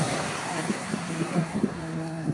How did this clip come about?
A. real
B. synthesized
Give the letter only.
B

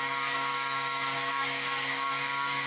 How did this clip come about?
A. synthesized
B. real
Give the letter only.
A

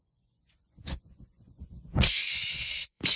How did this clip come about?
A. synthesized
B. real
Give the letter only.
A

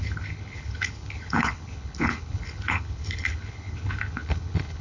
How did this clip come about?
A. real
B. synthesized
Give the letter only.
B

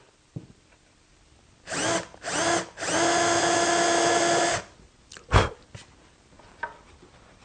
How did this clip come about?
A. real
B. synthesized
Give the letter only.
A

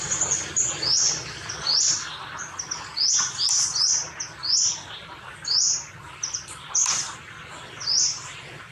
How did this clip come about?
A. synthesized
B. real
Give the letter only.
B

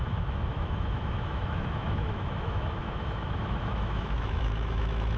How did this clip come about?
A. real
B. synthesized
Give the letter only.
B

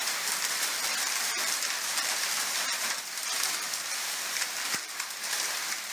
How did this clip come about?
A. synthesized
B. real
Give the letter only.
A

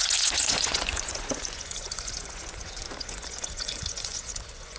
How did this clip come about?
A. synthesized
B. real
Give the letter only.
A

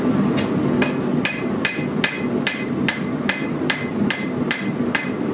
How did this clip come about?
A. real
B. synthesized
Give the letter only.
A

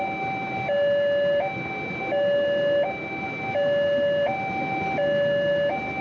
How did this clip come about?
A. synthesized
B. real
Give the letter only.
B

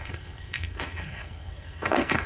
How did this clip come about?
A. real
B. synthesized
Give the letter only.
B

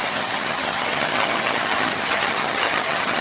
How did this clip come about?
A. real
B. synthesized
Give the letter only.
B